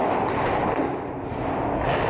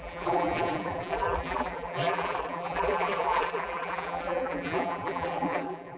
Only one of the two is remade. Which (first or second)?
second